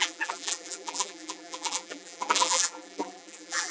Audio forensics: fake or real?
fake